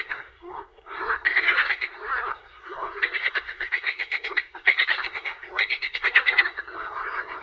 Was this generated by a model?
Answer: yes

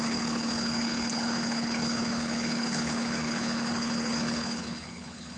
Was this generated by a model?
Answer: yes